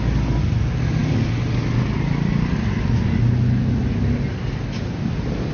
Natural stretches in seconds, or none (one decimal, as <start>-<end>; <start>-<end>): 0.0-5.5